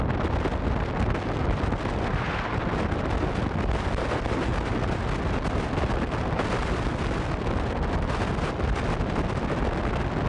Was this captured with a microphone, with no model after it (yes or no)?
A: yes